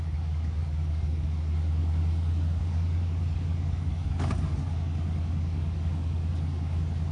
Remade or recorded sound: remade